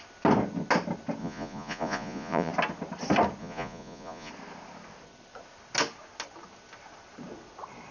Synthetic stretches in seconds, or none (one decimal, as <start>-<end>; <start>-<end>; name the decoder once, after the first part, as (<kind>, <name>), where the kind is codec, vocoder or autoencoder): 1.2-2.5 (vocoder, Vocos); 3.4-4.3